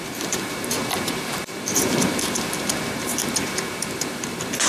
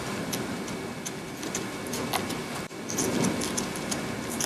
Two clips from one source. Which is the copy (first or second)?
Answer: first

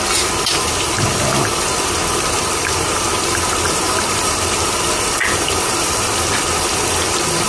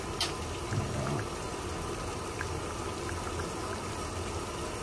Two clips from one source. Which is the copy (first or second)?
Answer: first